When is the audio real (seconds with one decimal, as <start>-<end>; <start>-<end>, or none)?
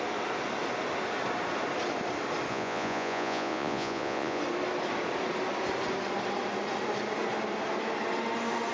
0.0-2.5; 4.4-8.7